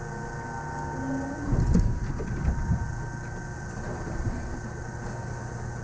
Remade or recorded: recorded